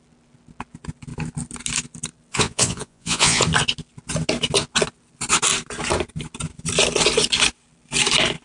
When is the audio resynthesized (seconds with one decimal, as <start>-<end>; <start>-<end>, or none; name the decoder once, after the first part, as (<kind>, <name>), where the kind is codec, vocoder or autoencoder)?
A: 2.3-3.4 (vocoder, Vocos)